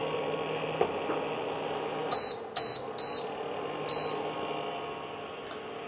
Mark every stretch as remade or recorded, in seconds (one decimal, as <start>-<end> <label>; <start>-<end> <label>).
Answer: 0.0-5.9 recorded